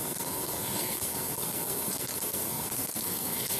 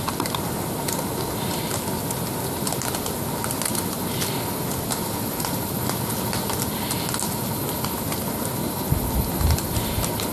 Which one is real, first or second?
second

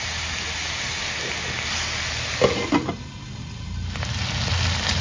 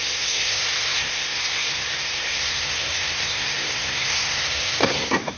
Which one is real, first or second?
first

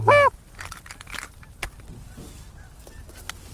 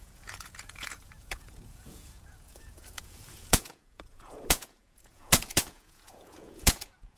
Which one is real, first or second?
first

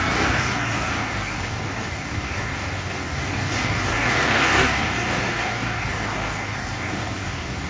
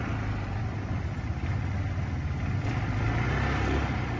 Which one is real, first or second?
second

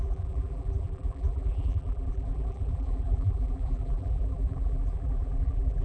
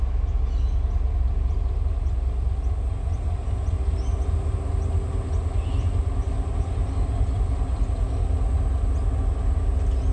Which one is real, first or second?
second